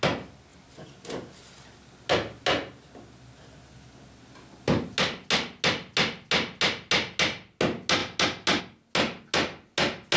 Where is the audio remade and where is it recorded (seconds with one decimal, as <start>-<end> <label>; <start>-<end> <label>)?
0.0-10.2 recorded